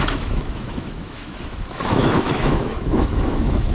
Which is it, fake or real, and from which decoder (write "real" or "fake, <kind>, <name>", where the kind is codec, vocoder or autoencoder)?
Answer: fake, autoencoder, DAC-VAE